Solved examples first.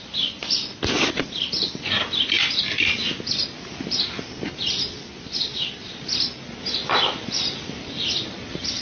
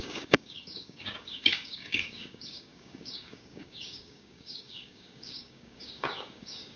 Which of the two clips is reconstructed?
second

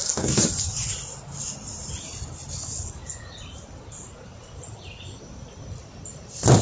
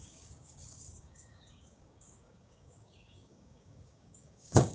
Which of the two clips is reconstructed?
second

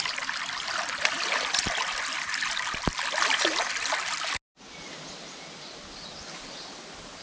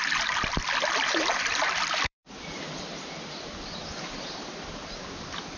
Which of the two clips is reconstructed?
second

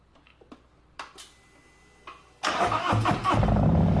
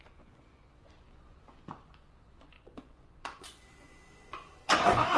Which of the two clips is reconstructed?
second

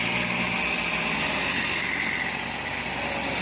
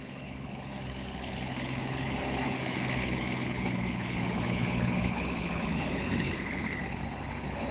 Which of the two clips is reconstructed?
second